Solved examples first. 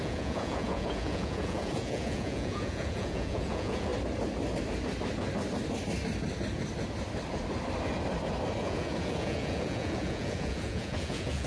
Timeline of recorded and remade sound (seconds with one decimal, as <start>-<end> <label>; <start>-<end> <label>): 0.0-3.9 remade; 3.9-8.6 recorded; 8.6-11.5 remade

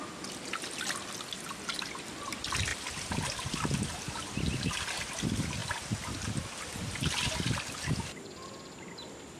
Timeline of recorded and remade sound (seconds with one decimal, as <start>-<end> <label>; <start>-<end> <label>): 0.0-9.4 recorded

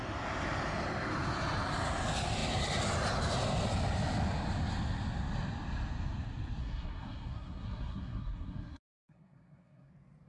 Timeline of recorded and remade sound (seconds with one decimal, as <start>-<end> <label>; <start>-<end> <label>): 0.0-6.6 recorded; 6.6-9.9 remade; 9.9-10.3 recorded

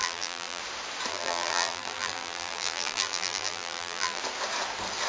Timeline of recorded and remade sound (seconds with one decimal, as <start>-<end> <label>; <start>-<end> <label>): 0.0-0.6 remade; 0.6-1.1 recorded; 1.1-4.2 remade; 4.2-5.1 recorded

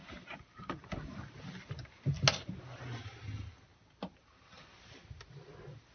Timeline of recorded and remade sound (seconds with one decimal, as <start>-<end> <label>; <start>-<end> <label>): 0.0-5.9 recorded

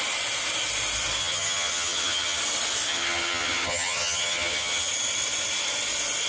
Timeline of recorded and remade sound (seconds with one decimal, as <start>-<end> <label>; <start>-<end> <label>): 0.0-1.2 recorded; 1.2-2.4 remade; 2.4-2.9 recorded; 2.9-4.9 remade; 4.9-6.3 recorded

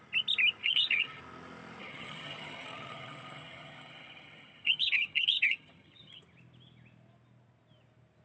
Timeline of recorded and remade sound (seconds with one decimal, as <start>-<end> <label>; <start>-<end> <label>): 0.0-0.6 recorded; 0.6-1.2 remade; 1.2-1.8 recorded; 1.8-6.2 remade; 6.2-8.2 recorded

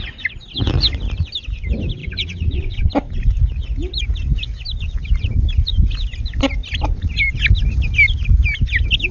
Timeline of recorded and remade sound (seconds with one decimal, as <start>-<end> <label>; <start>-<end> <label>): 0.0-2.0 recorded; 2.0-2.9 remade; 2.9-9.1 recorded